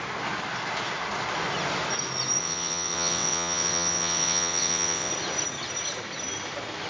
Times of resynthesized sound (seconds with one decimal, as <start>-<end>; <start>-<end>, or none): 2.4-5.1